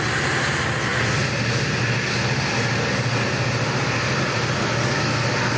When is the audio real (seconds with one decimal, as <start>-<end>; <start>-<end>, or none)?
0.0-5.6